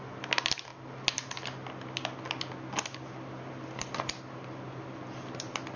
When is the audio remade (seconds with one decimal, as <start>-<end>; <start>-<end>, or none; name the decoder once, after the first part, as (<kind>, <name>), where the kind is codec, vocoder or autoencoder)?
none